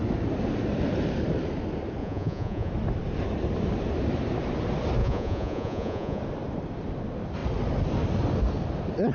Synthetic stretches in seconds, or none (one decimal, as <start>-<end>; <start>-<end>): 2.0-2.7; 5.0-6.2